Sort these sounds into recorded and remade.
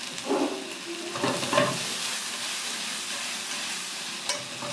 recorded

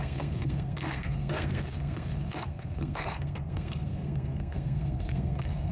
remade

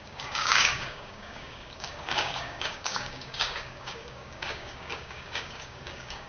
remade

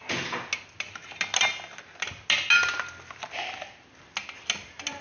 recorded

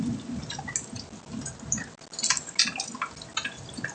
recorded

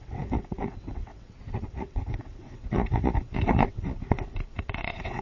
remade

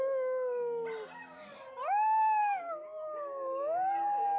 recorded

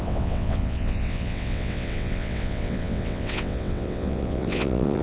remade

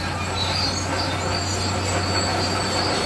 recorded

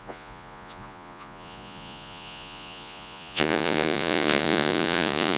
remade